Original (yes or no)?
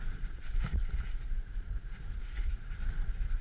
no